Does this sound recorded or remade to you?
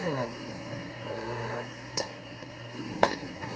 remade